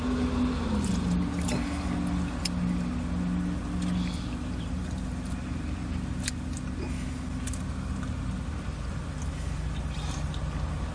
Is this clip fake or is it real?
real